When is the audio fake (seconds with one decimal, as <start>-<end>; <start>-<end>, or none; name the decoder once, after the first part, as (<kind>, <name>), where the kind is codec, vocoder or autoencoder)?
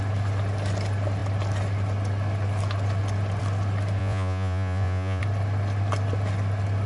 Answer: 4.0-5.2 (vocoder, Vocos)